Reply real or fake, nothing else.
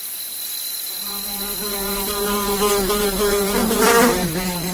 fake